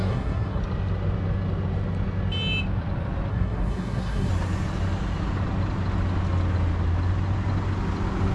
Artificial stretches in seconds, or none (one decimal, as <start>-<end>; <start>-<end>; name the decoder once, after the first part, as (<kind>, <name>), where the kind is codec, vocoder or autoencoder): 0.0-0.6 (codec, SNAC); 3.3-4.3

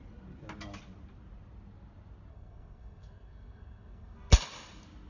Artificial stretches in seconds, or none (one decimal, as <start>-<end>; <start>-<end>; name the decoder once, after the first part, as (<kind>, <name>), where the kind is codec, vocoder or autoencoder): 2.3-4.3 (codec, SNAC)

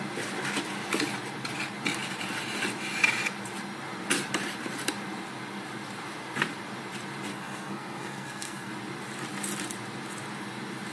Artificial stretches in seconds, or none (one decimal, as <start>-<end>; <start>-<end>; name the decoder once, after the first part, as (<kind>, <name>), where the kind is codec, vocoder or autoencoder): 7.3-8.7 (codec, SNAC)

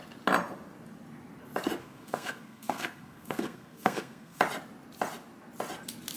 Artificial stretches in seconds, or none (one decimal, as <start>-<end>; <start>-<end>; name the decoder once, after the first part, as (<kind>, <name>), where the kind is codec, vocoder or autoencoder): 1.8-4.4 (codec, SNAC)

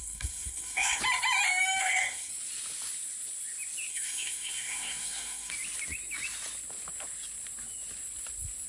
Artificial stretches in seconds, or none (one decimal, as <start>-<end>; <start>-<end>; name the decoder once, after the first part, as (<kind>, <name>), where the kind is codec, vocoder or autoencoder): 0.0-1.0 (codec, SNAC); 1.8-2.3; 3.9-5.5

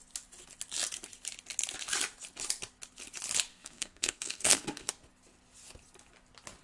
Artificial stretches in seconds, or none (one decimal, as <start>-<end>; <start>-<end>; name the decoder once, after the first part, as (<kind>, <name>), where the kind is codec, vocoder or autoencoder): 3.5-4.9 (codec, SNAC)